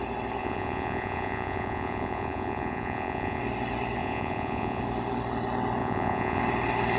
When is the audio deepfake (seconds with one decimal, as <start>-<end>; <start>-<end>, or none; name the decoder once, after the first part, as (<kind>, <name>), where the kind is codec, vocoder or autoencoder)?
0.4-3.4 (vocoder, Vocos); 4.0-4.8; 5.8-6.4